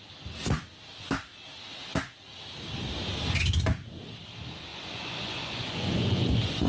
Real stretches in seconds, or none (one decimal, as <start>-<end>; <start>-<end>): 0.0-4.7